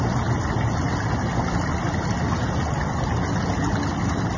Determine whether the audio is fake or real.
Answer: real